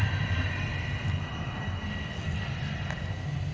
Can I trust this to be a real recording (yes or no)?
yes